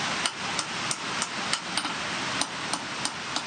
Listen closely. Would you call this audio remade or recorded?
recorded